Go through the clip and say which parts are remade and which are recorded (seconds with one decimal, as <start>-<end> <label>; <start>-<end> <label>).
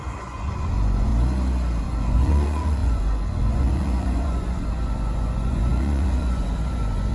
0.0-1.1 remade; 1.1-1.8 recorded; 1.8-7.1 remade